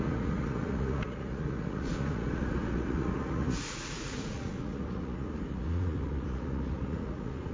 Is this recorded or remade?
remade